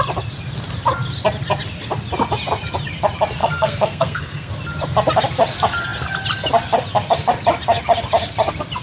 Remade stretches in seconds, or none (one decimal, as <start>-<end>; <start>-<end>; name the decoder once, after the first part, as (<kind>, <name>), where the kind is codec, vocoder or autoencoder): 3.4-4.5 (codec, SNAC)